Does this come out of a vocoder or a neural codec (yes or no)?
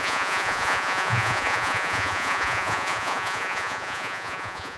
yes